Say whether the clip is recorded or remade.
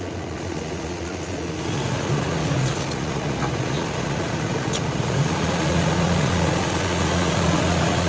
remade